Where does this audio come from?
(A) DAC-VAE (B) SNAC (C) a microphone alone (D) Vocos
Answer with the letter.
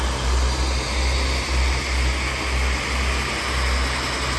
C